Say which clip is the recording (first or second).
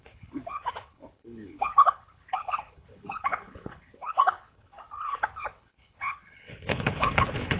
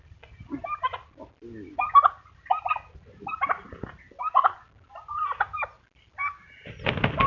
second